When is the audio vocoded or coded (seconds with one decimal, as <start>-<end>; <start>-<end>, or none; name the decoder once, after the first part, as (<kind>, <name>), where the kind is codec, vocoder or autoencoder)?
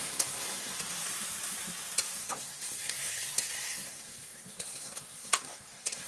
0.0-0.8 (codec, SNAC); 2.2-6.1